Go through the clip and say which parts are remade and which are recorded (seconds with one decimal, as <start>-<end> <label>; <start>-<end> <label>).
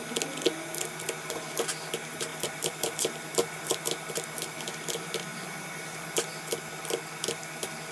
0.0-2.3 recorded; 2.3-3.8 remade; 3.8-7.9 recorded